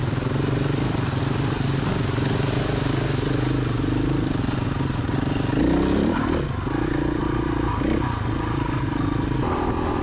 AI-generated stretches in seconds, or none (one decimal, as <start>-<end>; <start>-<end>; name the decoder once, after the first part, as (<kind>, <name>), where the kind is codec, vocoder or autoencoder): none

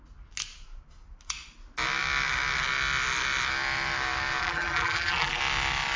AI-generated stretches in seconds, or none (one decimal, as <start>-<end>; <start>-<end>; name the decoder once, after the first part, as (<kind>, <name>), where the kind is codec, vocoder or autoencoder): 4.4-5.4 (vocoder, BigVGAN v2)

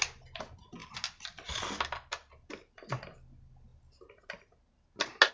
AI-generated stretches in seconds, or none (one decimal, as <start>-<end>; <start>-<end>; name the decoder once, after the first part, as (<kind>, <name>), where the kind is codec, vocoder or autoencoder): none

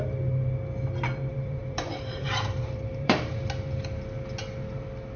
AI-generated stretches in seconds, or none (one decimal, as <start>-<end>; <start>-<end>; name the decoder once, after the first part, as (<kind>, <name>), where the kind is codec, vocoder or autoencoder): 1.3-3.4 (vocoder, BigVGAN v2)

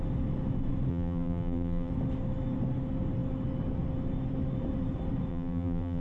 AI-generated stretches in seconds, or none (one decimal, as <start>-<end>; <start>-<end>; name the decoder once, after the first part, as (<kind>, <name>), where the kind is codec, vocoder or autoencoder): 0.9-1.9 (vocoder, BigVGAN v2); 5.3-6.0

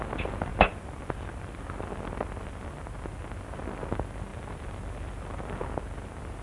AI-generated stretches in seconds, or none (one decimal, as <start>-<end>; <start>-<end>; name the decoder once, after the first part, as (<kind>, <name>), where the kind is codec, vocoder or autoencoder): 0.5-1.6 (vocoder, BigVGAN v2); 4.3-5.6

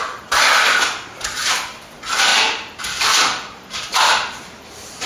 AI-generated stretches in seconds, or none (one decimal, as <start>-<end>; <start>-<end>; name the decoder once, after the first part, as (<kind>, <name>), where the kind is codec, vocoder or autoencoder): 0.0-5.1 (vocoder, BigVGAN v2)

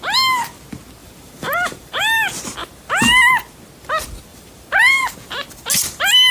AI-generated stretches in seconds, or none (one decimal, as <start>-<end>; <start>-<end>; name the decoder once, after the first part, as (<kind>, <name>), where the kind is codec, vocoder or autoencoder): 1.0-2.0 (vocoder, BigVGAN v2); 2.6-3.3; 4.3-5.1